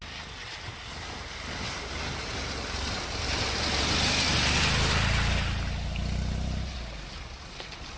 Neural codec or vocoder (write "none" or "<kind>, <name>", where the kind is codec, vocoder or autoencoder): none